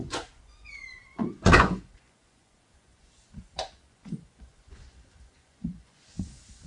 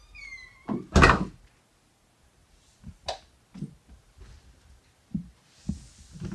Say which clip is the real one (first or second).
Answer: second